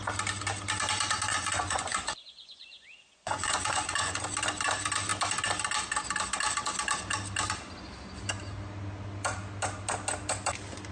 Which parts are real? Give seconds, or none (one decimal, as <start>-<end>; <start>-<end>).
0.0-1.3; 4.2-10.9